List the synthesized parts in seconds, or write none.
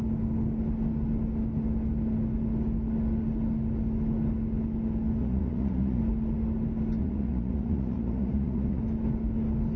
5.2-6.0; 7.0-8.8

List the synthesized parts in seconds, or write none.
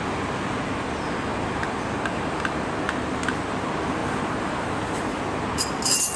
none